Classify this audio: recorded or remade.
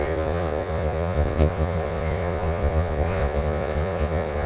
remade